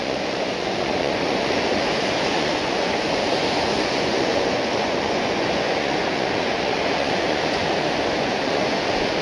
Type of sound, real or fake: fake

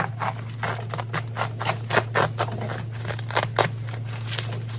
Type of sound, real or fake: real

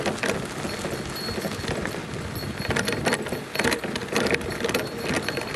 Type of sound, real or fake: real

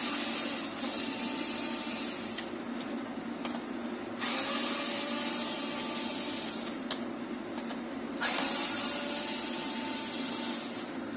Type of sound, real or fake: real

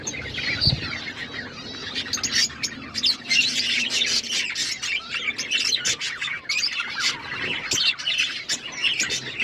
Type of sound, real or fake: real